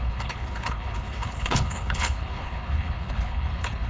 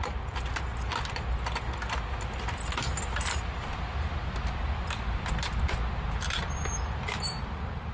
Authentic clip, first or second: second